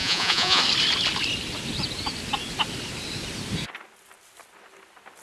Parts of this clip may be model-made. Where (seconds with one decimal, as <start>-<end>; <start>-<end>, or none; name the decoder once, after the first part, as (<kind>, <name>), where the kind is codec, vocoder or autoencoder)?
0.0-0.6 (vocoder, Vocos)